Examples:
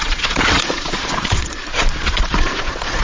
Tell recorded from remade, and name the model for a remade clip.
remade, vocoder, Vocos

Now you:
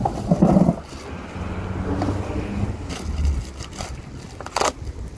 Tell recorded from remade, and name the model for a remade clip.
recorded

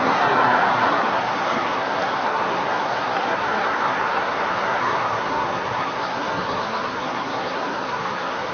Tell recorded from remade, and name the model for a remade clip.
remade, codec, SNAC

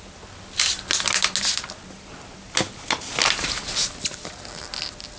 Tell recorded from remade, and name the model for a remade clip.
recorded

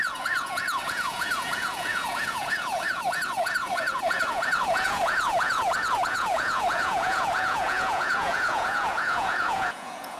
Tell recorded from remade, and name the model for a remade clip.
remade, vocoder, Vocos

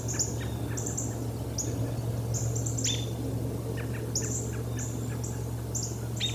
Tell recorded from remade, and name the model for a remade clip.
recorded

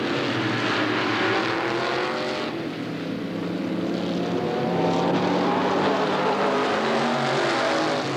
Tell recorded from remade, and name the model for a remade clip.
recorded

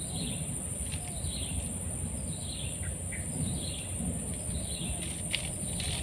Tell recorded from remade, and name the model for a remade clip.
recorded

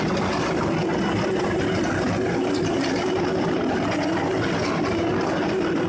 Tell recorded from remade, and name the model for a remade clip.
recorded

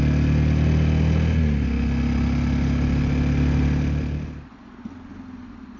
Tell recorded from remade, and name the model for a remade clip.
recorded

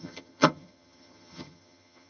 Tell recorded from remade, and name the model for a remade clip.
remade, vocoder, HiFi-GAN